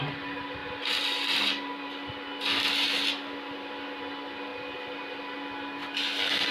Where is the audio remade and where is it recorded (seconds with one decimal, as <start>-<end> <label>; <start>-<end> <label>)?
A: 0.0-0.6 recorded; 0.6-2.1 remade; 2.1-6.5 recorded